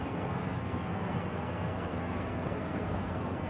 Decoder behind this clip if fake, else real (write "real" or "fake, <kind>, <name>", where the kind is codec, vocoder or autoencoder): fake, codec, SNAC